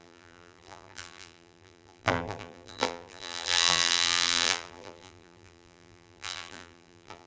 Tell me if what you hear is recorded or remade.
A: remade